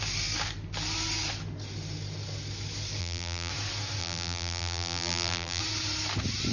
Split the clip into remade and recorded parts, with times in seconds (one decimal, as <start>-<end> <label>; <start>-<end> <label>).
0.0-3.0 recorded; 3.0-3.5 remade; 3.5-4.0 recorded; 4.0-5.6 remade; 5.6-6.5 recorded